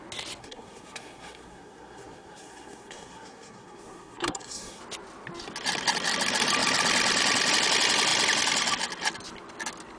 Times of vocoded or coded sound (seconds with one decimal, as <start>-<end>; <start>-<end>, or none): 0.4-4.8